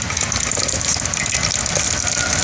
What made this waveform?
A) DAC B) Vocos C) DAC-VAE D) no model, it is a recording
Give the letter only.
D